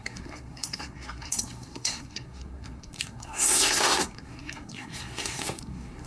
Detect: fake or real fake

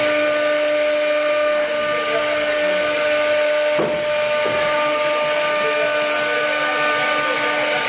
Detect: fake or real real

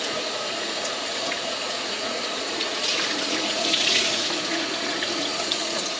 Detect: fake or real fake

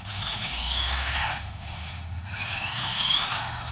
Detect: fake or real fake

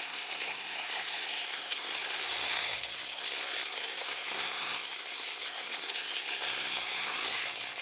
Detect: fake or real fake